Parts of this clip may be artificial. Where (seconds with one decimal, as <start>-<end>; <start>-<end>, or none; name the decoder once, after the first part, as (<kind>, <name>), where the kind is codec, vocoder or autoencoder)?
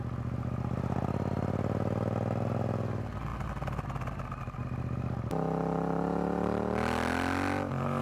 none